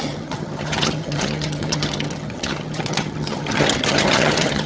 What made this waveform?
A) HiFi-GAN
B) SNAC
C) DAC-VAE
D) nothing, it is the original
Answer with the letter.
A